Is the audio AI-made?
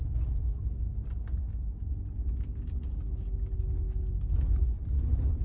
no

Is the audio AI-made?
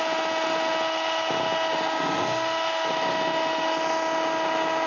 no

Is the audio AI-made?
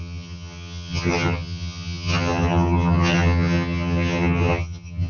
yes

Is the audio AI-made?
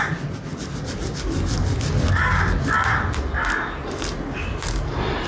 no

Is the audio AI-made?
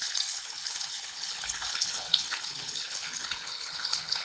yes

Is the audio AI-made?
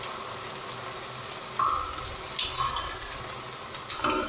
no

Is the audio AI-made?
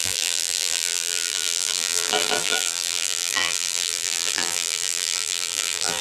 yes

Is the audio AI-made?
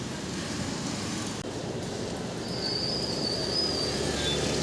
no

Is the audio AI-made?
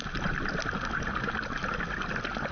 no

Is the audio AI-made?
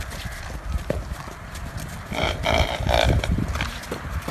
yes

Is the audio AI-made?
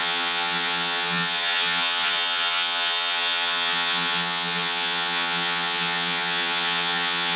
yes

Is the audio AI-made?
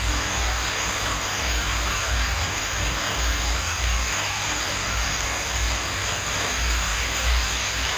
yes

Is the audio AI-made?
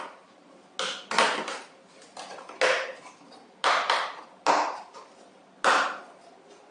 no